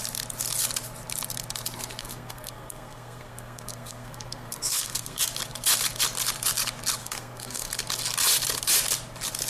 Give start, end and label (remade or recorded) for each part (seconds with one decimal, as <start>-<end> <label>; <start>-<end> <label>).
0.0-2.0 recorded; 2.0-5.2 remade; 5.2-7.0 recorded; 7.0-7.7 remade; 7.7-9.5 recorded